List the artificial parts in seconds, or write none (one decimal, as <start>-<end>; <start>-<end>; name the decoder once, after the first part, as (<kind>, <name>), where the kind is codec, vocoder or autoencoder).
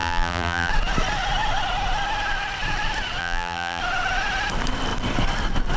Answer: 0.0-0.7 (vocoder, BigVGAN v2); 3.2-3.8